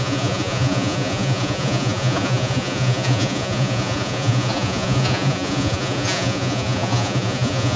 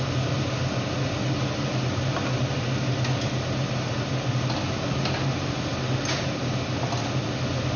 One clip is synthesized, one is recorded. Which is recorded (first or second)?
second